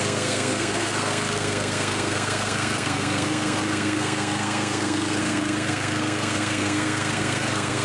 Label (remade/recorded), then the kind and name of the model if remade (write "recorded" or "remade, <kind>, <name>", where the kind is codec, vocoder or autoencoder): remade, codec, SNAC